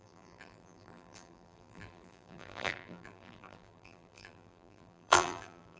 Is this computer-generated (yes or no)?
yes